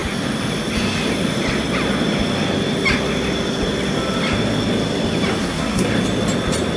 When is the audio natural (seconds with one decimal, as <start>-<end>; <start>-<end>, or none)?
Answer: 0.0-5.4; 5.9-6.8